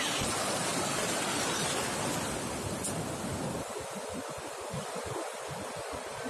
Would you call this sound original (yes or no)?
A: yes